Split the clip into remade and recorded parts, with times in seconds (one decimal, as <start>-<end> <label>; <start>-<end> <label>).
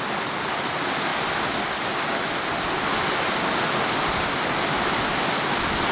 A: 0.0-5.9 recorded